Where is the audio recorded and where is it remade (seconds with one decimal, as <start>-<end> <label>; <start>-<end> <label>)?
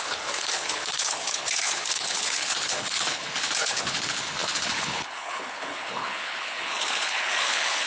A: 0.0-7.9 remade